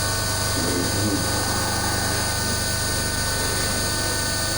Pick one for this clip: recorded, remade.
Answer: recorded